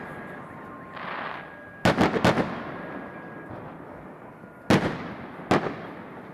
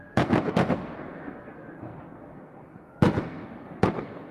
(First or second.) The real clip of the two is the first